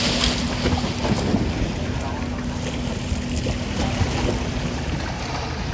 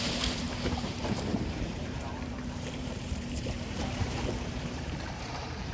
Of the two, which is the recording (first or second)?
first